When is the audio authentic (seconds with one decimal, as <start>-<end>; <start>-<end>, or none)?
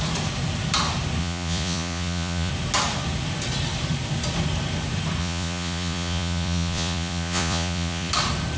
0.0-1.2; 2.5-5.2; 8.1-8.6